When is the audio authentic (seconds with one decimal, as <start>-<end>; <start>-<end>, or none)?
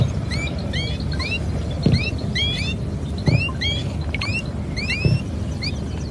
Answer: 0.0-6.1